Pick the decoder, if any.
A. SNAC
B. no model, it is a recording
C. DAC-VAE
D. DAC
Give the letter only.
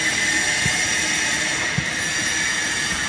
B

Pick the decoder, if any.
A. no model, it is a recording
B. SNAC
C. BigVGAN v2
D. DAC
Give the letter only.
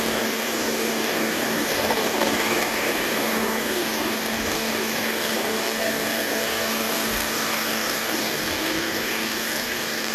D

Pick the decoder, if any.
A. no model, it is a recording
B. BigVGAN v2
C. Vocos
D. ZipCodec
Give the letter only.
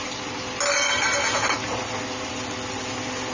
A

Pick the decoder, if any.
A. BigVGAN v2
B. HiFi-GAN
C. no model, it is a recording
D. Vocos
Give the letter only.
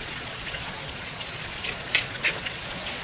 D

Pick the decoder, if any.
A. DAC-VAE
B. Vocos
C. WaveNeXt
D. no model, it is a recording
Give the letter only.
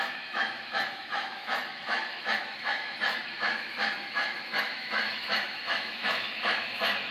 A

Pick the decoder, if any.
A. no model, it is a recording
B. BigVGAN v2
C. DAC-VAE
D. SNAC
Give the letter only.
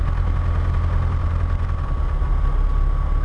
A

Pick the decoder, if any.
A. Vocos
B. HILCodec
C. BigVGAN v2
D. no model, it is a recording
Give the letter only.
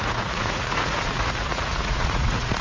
A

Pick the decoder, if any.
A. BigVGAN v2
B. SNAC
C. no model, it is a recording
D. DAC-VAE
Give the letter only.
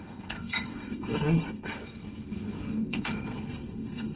B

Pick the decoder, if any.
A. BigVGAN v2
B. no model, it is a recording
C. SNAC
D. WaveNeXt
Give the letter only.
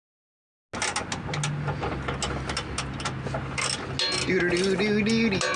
B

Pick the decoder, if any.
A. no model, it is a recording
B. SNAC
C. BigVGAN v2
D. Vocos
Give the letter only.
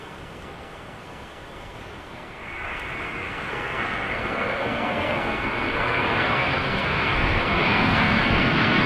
B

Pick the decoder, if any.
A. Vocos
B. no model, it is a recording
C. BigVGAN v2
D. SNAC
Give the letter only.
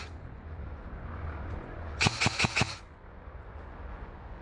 A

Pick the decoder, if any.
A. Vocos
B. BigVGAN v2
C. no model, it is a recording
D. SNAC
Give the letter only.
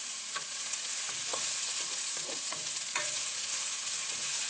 A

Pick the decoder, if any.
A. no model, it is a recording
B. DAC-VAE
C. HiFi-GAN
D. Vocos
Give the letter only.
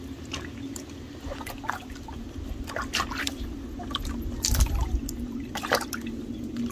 A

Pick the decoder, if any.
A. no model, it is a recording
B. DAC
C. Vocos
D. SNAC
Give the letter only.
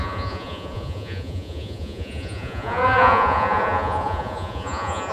C